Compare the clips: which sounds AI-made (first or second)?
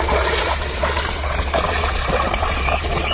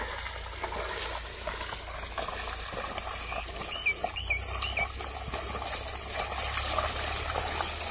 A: first